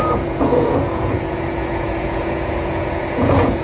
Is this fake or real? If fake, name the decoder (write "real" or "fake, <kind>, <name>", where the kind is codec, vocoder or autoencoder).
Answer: fake, vocoder, Vocos